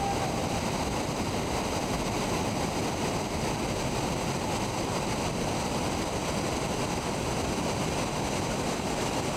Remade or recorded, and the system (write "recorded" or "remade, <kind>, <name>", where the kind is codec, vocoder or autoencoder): recorded